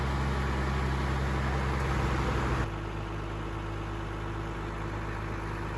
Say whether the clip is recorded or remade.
recorded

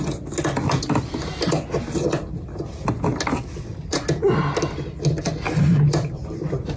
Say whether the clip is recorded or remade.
recorded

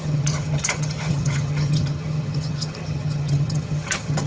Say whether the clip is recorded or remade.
remade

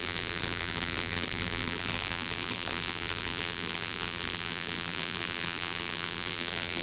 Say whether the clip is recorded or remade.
remade